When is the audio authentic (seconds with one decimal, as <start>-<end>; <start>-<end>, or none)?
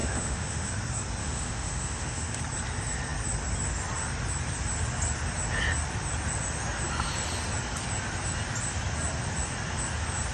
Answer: 0.7-1.2; 2.4-10.3